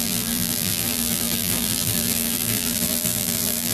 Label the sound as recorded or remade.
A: remade